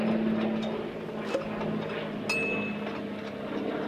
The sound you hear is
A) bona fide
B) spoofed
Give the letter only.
A